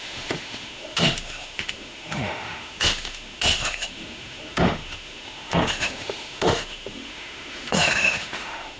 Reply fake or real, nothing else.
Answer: fake